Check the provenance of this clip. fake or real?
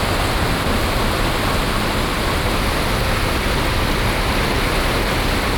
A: real